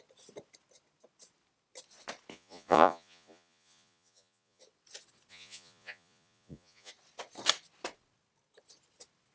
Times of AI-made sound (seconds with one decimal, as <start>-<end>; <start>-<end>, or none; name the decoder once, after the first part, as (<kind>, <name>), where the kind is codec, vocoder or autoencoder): 2.3-4.6 (vocoder, Vocos); 5.3-6.9